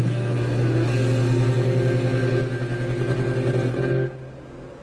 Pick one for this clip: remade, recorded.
recorded